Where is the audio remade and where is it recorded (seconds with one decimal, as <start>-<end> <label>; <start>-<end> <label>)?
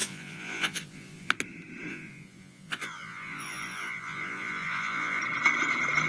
0.0-1.3 remade; 1.3-1.9 recorded; 1.9-5.2 remade; 5.2-6.1 recorded